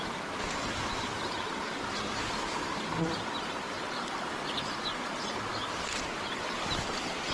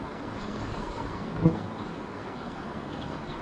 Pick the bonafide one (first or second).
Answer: first